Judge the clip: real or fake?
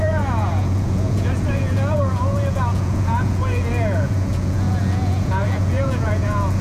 fake